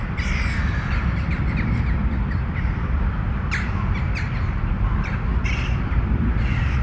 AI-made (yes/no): no